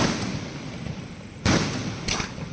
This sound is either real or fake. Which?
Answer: real